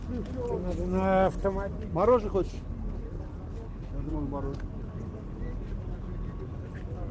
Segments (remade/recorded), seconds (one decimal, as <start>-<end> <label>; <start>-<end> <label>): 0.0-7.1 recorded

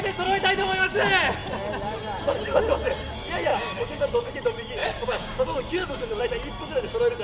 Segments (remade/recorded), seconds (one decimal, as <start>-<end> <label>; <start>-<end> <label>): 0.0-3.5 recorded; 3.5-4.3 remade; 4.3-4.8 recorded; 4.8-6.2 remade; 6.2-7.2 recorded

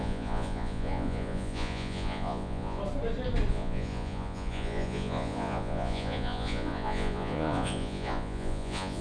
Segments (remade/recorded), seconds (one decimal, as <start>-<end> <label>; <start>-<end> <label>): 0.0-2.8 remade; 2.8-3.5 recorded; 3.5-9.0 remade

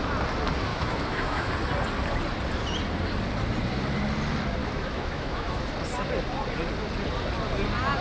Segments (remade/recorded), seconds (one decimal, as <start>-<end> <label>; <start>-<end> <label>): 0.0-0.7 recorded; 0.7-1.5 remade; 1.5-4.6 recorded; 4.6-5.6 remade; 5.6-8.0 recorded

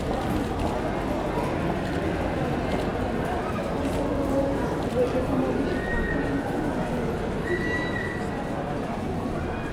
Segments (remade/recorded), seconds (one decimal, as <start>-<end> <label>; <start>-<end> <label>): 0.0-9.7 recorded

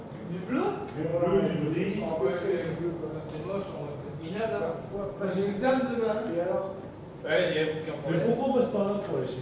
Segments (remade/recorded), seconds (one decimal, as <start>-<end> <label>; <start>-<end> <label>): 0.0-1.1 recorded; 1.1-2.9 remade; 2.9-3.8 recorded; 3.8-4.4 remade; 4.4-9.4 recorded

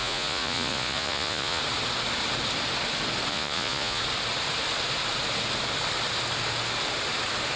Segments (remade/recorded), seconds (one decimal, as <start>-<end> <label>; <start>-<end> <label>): 0.0-1.6 remade; 1.6-3.3 recorded; 3.3-4.0 remade; 4.0-7.6 recorded

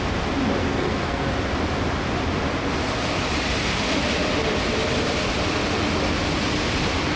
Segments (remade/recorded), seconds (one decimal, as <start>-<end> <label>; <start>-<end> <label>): 0.0-0.6 recorded; 0.6-1.3 remade; 1.3-7.2 recorded